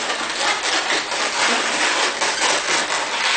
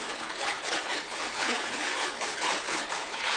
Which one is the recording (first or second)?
first